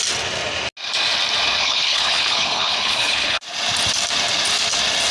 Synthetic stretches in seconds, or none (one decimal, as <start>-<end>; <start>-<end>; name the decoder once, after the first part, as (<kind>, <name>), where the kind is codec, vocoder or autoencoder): 1.6-3.4 (codec, HILCodec)